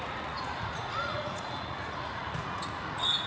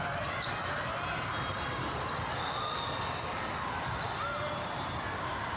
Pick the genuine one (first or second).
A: second